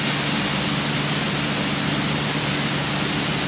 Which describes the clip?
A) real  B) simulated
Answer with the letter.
A